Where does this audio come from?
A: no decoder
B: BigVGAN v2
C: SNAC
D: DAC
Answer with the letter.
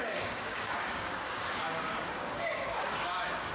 D